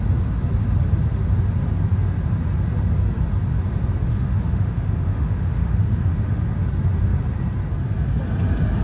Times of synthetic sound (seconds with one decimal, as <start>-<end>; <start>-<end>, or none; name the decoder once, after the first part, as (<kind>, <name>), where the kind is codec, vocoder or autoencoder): 4.1-6.4 (autoencoder, DAC-VAE)